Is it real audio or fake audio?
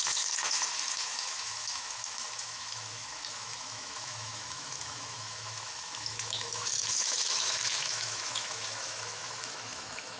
fake